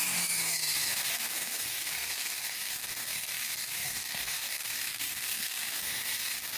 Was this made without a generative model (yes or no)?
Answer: no